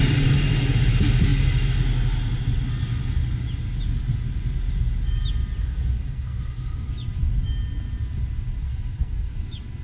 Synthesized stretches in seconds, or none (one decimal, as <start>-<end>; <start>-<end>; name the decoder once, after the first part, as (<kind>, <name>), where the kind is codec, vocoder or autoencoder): 5.6-6.9 (codec, SNAC); 8.6-9.3